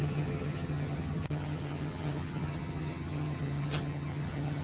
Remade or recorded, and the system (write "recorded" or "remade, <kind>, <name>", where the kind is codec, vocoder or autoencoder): remade, vocoder, HiFi-GAN